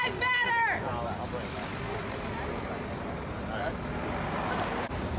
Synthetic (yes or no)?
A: no